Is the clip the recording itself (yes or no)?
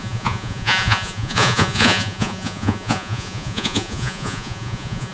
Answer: no